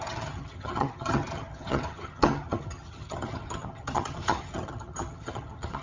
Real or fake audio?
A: fake